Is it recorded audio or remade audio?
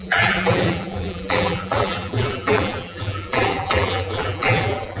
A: remade